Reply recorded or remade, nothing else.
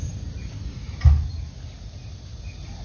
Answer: recorded